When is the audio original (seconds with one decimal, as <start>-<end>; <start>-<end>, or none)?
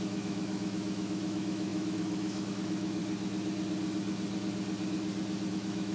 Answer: 3.0-5.5